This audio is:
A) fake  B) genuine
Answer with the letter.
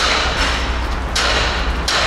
B